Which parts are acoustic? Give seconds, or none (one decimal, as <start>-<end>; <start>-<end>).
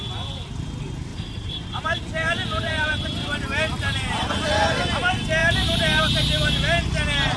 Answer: 0.0-1.1; 4.3-5.4; 6.0-7.4